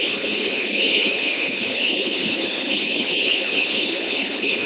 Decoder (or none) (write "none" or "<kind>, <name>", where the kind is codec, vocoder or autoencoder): codec, HILCodec